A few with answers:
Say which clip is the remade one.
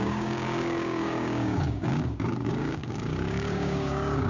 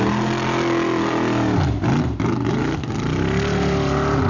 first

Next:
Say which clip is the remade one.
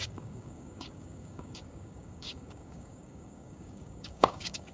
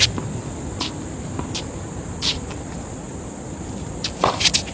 first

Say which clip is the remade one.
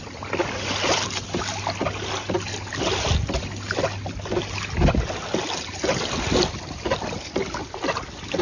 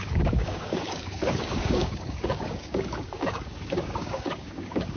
second